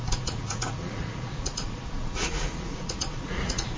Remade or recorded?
remade